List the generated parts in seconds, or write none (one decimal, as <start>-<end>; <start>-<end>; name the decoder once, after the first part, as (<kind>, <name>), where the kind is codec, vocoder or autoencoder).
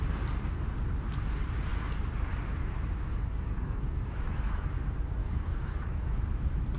3.1-4.7 (codec, DAC); 5.2-6.2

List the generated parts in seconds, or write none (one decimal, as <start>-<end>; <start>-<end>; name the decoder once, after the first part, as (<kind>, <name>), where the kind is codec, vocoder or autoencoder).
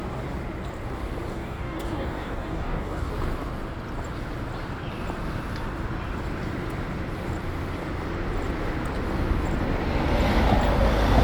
1.3-3.1 (codec, DAC)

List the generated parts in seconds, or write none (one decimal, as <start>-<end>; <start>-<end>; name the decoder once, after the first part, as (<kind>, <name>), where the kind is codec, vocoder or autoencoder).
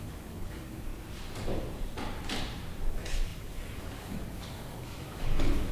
0.0-0.9 (codec, DAC); 2.9-5.7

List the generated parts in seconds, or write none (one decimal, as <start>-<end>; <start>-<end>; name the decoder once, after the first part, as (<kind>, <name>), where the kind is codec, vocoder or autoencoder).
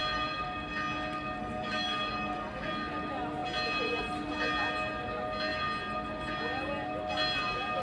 1.4-2.6 (codec, DAC)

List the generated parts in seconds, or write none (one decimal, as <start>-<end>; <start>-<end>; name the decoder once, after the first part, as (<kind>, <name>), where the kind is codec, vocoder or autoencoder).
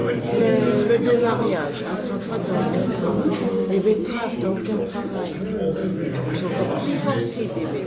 0.0-1.8 (codec, DAC); 2.8-4.9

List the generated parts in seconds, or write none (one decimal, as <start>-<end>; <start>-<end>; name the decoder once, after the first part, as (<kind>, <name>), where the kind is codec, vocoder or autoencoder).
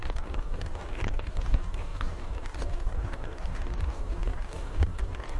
0.0-5.4 (codec, DAC)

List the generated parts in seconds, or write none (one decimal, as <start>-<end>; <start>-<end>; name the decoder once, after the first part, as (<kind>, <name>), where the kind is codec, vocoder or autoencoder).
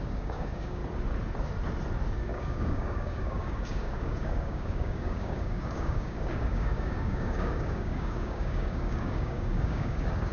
0.0-0.8 (codec, DAC); 2.1-10.3